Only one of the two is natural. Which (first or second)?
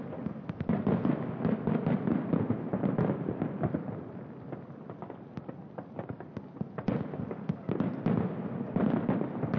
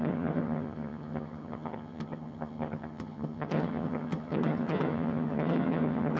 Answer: first